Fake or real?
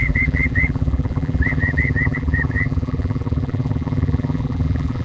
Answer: fake